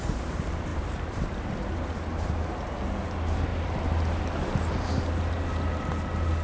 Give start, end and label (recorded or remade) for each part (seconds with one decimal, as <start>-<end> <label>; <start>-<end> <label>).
0.0-0.7 recorded; 0.7-1.5 remade; 1.5-6.4 recorded